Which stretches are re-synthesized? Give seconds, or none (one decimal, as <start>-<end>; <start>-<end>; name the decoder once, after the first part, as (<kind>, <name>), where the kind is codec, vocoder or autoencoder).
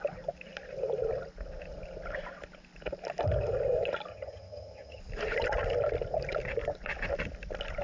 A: 4.1-5.0 (vocoder, HiFi-GAN)